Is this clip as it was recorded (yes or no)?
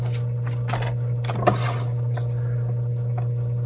yes